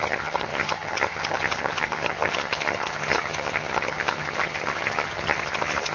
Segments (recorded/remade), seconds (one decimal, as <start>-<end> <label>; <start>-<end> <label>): 0.0-5.9 remade